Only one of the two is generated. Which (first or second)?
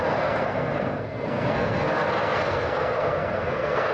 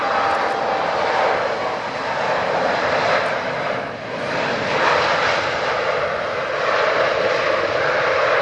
first